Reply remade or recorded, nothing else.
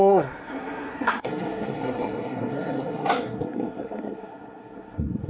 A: remade